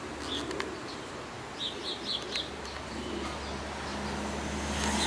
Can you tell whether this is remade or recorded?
recorded